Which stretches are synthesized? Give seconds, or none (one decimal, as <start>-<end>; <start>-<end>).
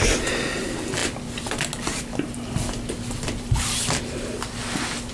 none